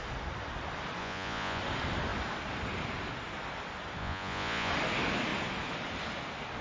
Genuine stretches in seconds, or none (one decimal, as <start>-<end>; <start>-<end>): 0.0-1.0; 1.6-4.0; 4.7-6.6